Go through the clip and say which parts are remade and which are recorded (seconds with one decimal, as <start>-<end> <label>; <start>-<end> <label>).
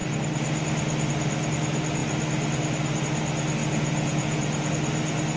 0.0-3.6 recorded; 3.6-4.7 remade; 4.7-5.4 recorded